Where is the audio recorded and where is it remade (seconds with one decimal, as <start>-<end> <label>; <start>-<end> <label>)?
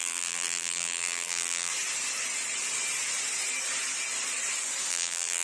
0.0-1.7 remade; 1.7-4.9 recorded; 4.9-5.4 remade